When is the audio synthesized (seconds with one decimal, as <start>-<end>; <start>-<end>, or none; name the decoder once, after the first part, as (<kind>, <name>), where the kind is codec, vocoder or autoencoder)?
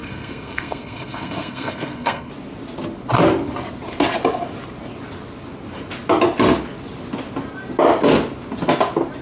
0.0-2.3 (codec, SNAC)